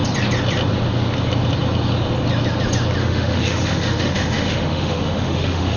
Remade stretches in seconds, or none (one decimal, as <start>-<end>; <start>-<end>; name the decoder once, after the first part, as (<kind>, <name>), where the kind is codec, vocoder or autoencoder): 3.0-5.8 (autoencoder, DAC-VAE)